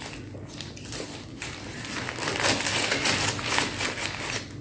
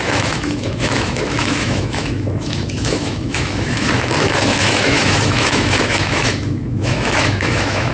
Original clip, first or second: first